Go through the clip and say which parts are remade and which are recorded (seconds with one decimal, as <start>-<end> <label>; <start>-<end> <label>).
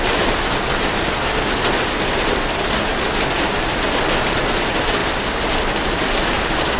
0.0-6.8 recorded